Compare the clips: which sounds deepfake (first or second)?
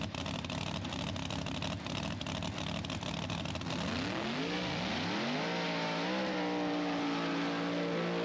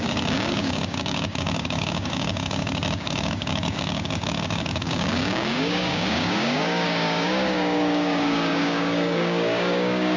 second